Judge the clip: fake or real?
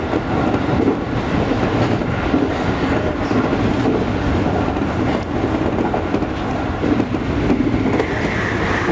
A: real